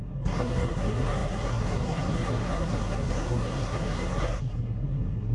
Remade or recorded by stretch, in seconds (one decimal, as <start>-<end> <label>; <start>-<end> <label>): 0.0-5.3 remade

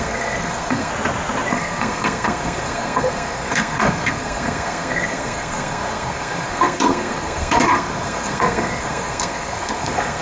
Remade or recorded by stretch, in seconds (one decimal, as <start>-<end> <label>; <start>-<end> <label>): 0.0-0.9 remade; 0.9-1.5 recorded; 1.5-10.2 remade

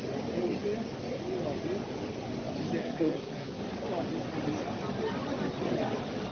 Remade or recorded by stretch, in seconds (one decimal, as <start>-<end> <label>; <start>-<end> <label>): 0.0-2.8 recorded; 2.8-3.6 remade; 3.6-6.3 recorded

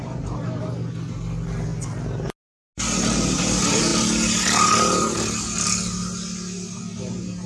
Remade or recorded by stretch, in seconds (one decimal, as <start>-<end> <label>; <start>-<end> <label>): 0.0-7.5 recorded

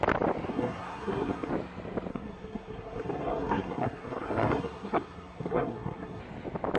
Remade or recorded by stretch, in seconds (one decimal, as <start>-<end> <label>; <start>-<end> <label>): 0.0-0.5 recorded; 0.5-1.5 remade; 1.5-2.1 recorded; 2.1-6.2 remade; 6.2-6.8 recorded

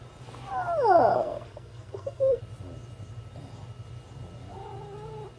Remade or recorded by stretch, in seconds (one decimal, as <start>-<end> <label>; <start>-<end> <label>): 0.0-1.1 recorded; 1.1-2.4 remade; 2.4-5.4 recorded

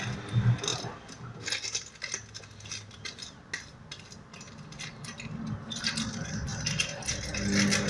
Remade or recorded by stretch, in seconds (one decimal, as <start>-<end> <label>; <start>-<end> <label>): 0.0-7.9 recorded